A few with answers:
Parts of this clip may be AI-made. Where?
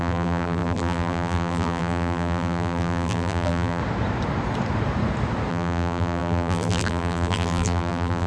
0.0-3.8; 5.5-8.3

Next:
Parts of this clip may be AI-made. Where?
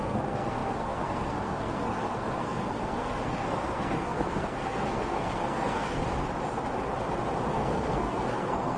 0.0-6.0; 7.5-8.8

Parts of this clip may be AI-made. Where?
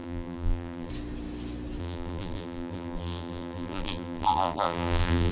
0.0-0.9; 1.8-5.3